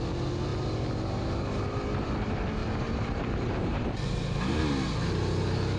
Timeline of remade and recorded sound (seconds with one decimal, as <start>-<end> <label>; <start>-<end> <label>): 0.0-2.6 recorded; 2.6-4.6 remade; 4.6-5.8 recorded